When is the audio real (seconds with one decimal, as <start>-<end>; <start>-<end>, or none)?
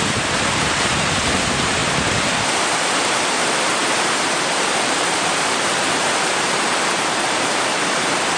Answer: none